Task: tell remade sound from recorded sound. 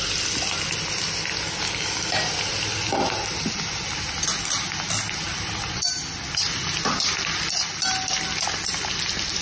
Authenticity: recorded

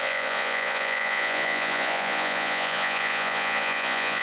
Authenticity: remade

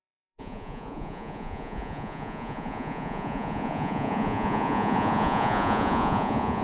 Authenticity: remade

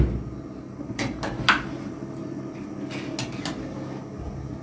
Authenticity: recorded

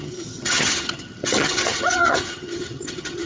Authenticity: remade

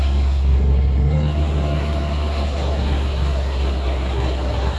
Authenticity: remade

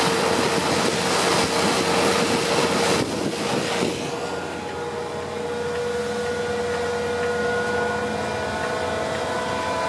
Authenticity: recorded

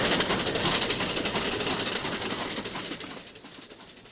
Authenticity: remade